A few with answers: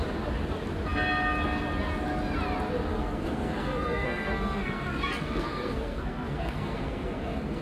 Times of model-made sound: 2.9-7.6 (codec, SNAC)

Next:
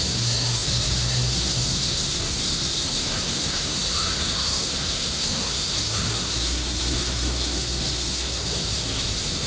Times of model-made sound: 0.0-9.5 (codec, SNAC)

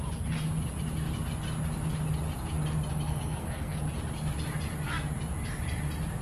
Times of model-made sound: 3.1-3.8 (codec, SNAC)

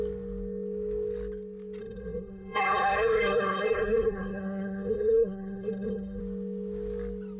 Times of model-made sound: 1.8-6.2 (codec, SNAC)

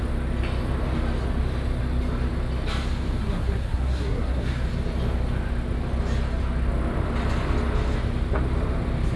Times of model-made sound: 3.2-4.6 (codec, SNAC)

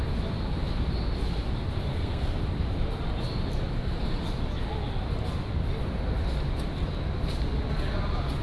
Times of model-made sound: 1.9-2.4 (codec, SNAC)

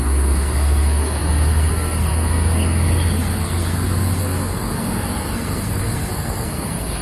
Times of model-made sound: 0.0-7.0 (codec, SNAC)

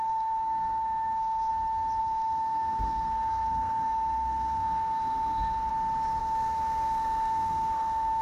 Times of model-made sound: 0.0-1.5 (codec, SNAC); 2.0-5.7; 6.2-8.2